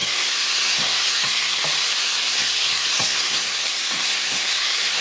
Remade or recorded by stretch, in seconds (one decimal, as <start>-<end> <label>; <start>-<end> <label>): 0.0-1.6 remade; 1.6-2.0 recorded; 2.0-5.0 remade